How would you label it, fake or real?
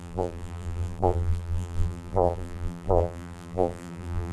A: fake